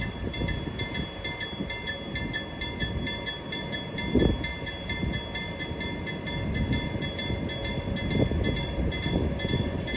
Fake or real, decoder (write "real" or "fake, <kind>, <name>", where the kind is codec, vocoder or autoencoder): real